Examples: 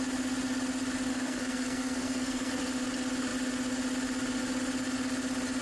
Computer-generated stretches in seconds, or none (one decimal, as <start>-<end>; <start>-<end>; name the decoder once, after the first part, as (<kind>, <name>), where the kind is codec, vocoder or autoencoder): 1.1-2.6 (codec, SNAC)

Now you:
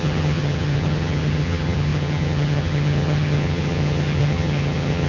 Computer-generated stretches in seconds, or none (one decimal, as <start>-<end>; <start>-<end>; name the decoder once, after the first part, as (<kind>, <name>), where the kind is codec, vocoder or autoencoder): 0.0-5.1 (vocoder, HiFi-GAN)

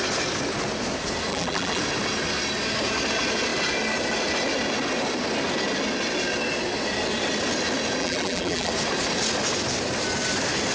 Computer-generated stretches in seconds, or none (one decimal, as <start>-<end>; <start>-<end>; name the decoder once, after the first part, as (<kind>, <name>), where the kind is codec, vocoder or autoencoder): 1.3-1.8 (vocoder, BigVGAN v2); 8.0-8.7

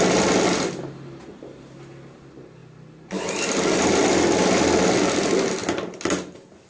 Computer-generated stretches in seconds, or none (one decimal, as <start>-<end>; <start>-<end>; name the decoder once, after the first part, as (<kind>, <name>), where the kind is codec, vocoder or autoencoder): none

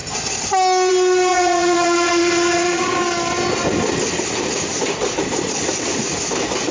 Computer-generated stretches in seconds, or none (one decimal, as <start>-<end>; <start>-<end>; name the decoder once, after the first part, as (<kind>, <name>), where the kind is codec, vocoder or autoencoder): 1.3-3.0 (vocoder, Vocos)

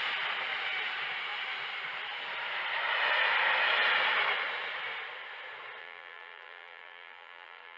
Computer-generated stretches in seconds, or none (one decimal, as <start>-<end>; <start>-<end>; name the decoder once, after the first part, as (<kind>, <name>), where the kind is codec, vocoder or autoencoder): 5.8-7.8 (vocoder, BigVGAN v2)